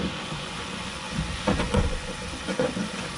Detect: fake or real fake